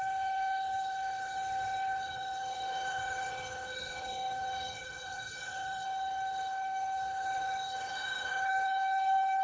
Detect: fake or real fake